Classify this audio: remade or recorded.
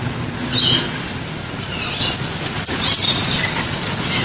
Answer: recorded